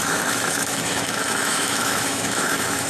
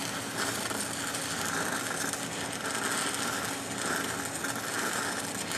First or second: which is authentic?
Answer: second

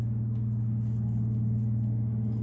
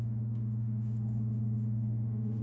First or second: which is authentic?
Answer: first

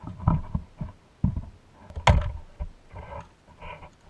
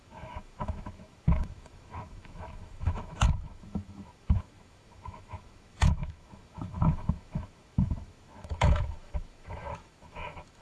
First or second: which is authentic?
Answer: first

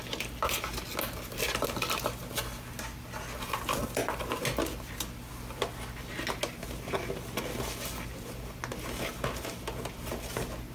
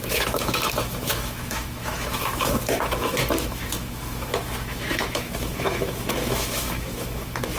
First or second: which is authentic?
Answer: first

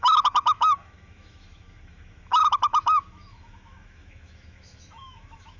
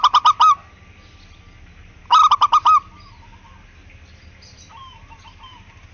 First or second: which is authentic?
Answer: second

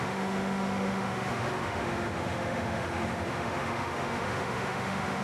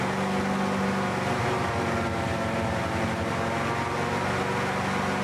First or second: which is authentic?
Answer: second